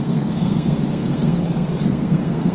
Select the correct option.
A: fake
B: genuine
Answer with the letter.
A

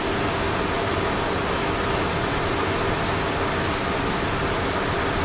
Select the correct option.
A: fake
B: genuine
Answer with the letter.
B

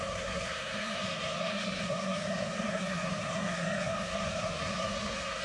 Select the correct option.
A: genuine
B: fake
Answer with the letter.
B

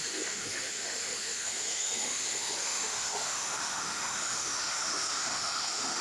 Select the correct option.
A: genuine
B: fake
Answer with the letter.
B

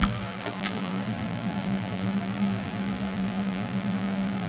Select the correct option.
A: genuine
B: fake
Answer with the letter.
B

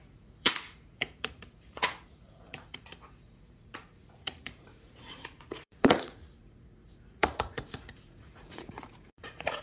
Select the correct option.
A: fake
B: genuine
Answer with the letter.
A